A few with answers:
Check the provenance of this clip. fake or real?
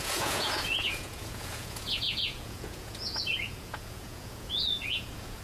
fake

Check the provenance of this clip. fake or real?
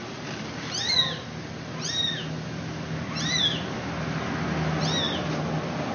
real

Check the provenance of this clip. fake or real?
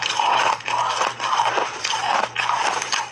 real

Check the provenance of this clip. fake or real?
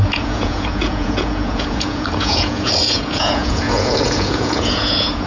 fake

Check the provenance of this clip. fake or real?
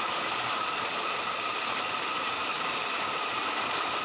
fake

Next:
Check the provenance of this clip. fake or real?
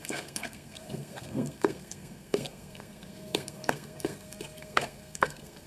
fake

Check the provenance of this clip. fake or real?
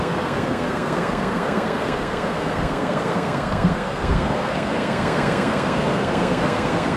fake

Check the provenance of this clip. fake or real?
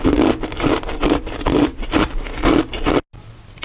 real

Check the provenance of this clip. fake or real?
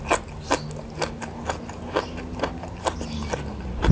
real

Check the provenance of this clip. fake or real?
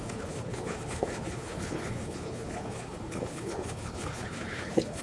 fake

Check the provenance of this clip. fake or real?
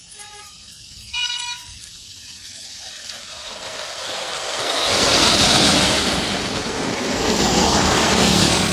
fake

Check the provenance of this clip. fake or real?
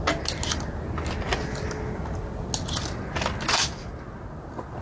real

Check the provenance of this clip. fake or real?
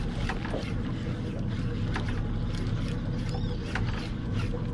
real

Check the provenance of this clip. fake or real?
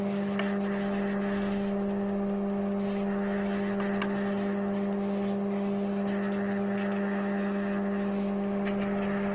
real